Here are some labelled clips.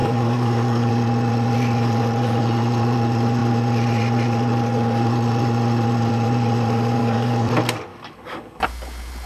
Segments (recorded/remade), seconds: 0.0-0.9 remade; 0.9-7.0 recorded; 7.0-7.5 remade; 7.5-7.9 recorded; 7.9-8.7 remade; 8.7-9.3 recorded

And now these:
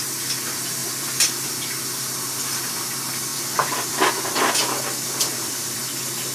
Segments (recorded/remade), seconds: 0.0-0.8 recorded; 0.8-1.5 remade; 1.5-3.3 recorded; 3.3-4.1 remade; 4.1-5.3 recorded; 5.3-5.8 remade; 5.8-6.3 recorded

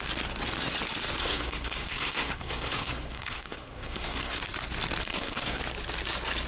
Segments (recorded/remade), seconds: 0.0-1.2 recorded; 1.2-4.4 remade; 4.4-5.0 recorded; 5.0-5.6 remade; 5.6-6.5 recorded

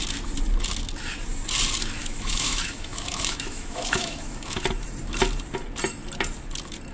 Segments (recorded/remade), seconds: 0.0-2.0 recorded; 2.0-4.6 remade; 4.6-6.9 recorded